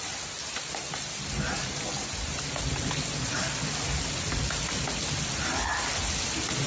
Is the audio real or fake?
real